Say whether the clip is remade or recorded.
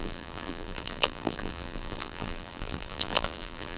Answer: remade